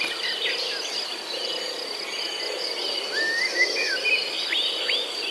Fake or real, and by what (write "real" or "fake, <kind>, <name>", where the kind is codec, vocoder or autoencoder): real